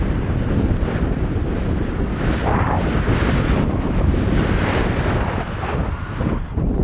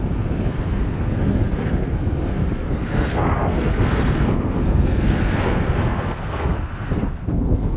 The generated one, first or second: second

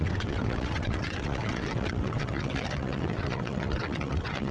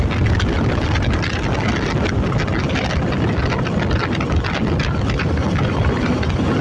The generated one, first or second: first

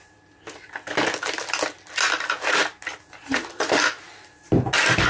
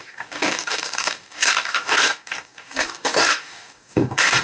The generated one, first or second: second